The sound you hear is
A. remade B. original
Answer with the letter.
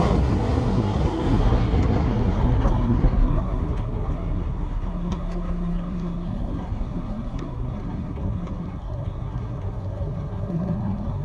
A